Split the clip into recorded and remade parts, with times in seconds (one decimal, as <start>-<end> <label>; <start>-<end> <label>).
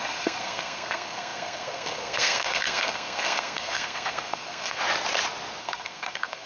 0.0-4.8 remade; 4.8-5.6 recorded; 5.6-6.5 remade